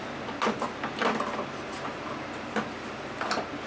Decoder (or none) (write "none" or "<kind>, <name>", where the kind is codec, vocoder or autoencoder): none